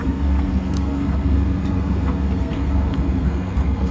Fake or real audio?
fake